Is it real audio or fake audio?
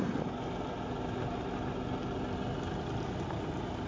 real